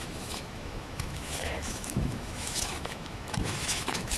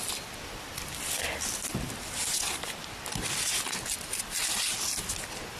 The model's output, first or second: first